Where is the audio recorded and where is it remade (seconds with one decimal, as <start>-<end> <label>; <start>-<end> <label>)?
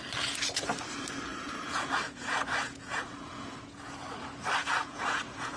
0.0-1.3 recorded; 1.3-3.9 remade; 3.9-4.6 recorded; 4.6-5.6 remade